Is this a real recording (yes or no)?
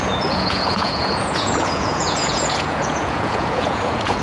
no